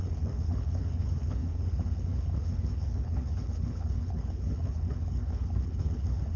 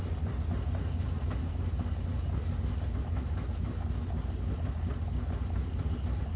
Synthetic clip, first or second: first